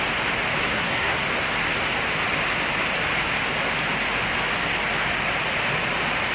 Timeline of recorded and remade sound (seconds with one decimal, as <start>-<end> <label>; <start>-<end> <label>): 0.0-0.6 recorded; 0.6-1.3 remade; 1.3-6.3 recorded